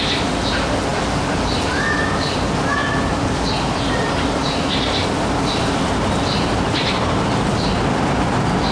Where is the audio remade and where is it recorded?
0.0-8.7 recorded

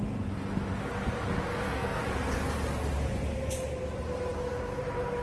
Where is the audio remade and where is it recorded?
0.0-1.5 recorded; 1.5-2.0 remade; 2.0-5.2 recorded